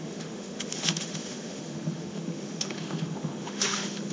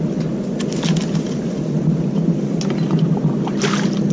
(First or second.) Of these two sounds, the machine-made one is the first